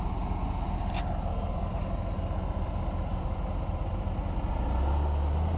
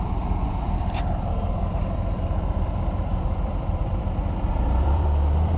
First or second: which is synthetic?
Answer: second